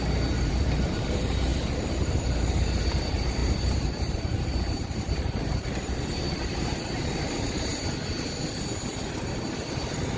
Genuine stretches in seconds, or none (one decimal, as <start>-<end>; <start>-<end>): 7.7-9.5